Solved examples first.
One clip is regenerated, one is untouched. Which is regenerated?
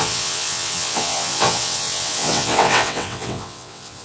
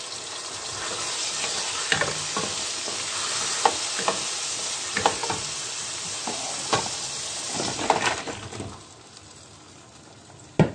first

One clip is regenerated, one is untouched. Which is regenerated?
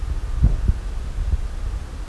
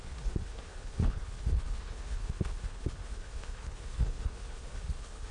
second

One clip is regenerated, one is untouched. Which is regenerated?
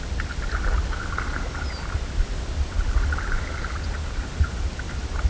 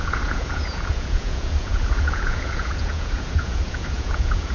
second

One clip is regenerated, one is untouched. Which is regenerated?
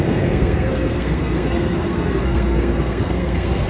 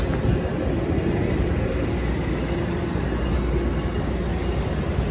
first